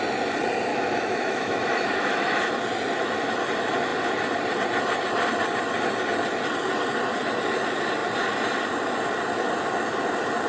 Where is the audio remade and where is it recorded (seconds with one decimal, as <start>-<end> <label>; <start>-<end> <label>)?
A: 0.0-0.7 recorded; 0.7-2.5 remade; 2.5-10.5 recorded